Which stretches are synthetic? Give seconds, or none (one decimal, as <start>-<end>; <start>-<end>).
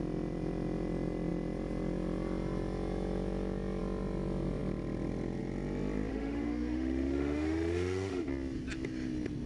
6.1-8.3